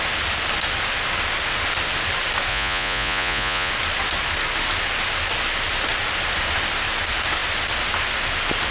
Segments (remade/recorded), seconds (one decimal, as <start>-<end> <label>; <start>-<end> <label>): 0.0-2.5 recorded; 2.5-3.7 remade; 3.7-8.7 recorded